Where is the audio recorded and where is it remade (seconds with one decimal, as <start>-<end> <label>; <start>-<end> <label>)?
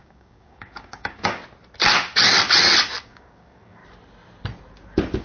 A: 0.0-1.4 remade; 1.4-3.0 recorded; 3.0-3.8 remade; 3.8-5.2 recorded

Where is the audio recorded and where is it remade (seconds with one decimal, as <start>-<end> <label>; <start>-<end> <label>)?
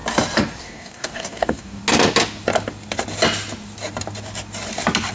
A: 0.0-0.6 recorded; 0.6-1.8 remade; 1.8-5.1 recorded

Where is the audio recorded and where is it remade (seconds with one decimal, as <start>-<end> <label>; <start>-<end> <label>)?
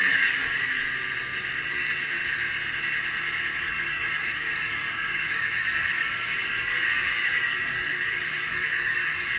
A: 0.0-0.8 remade; 0.8-1.7 recorded; 1.7-2.2 remade; 2.2-3.6 recorded; 3.6-9.4 remade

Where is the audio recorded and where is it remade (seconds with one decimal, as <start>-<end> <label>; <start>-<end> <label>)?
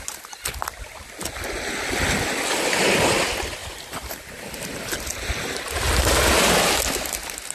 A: 0.0-7.5 recorded